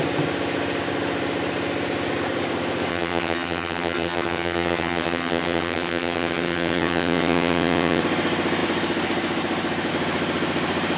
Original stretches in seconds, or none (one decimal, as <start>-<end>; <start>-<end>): 0.0-2.9; 8.0-11.0